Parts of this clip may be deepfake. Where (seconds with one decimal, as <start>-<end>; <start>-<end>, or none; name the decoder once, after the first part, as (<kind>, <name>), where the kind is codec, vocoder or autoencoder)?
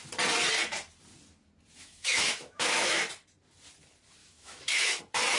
1.8-3.0 (autoencoder, DAC-VAE); 4.2-5.0